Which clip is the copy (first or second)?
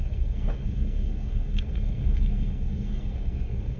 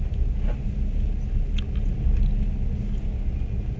first